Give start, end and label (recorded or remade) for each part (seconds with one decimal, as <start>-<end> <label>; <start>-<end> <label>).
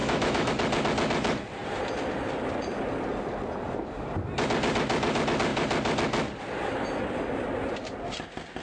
0.0-0.5 remade; 0.5-8.6 recorded